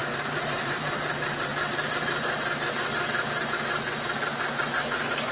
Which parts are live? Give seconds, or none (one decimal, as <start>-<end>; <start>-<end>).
1.1-1.5; 2.1-5.3